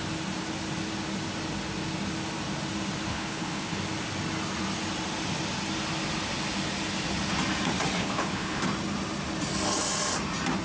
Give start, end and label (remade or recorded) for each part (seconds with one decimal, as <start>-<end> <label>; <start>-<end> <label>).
0.0-3.1 recorded; 3.1-3.8 remade; 3.8-8.0 recorded; 8.0-8.6 remade; 8.6-10.6 recorded